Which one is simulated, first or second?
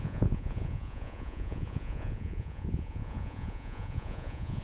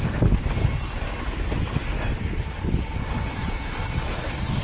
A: first